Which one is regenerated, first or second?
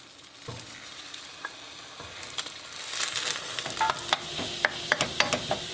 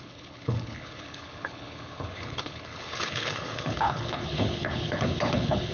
second